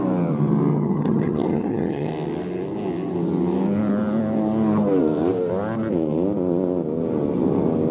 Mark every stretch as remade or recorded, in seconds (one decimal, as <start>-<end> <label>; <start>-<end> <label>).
0.0-0.7 recorded; 0.7-2.1 remade; 2.1-7.9 recorded